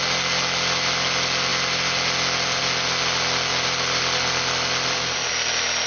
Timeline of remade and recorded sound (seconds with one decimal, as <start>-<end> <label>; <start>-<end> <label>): 0.0-5.9 recorded